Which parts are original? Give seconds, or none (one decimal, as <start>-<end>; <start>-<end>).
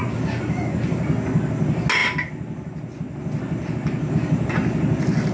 0.0-5.3